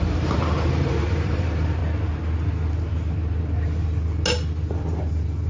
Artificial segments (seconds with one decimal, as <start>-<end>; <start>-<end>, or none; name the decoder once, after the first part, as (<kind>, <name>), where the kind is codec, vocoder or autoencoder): 0.0-1.8 (vocoder, BigVGAN v2); 5.1-5.5